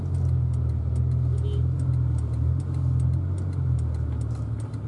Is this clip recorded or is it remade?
recorded